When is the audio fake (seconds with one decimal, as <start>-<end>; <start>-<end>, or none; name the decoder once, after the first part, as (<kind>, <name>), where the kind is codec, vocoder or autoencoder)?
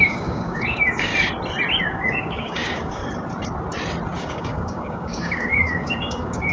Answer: 0.0-1.1 (codec, DAC); 1.8-3.0; 4.2-6.5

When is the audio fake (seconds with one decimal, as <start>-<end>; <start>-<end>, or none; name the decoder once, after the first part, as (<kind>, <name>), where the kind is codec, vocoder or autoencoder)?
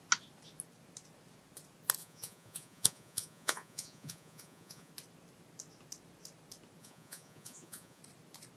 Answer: 2.0-4.9 (vocoder, Vocos); 6.8-8.0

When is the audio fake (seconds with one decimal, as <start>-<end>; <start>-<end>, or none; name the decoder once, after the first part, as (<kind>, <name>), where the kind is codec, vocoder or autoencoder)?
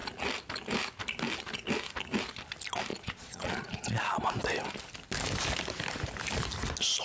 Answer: 2.9-4.2 (vocoder, Vocos)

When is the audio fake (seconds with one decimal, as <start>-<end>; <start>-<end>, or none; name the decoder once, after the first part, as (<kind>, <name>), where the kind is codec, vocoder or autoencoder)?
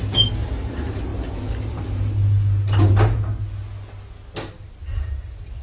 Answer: none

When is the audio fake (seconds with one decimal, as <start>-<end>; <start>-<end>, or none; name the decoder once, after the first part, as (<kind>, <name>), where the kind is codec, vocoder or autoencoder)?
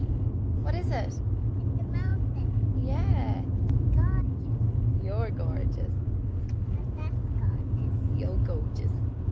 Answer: none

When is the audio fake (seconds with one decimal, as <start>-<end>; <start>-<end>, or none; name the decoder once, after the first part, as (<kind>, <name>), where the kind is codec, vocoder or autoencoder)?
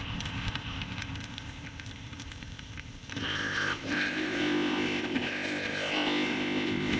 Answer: 0.0-7.0 (codec, ZipCodec)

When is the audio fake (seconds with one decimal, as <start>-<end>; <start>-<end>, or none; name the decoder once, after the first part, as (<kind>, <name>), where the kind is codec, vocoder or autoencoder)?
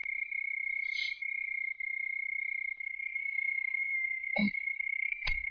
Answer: 2.8-5.5 (codec, SNAC)